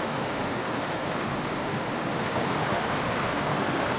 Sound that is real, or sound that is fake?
fake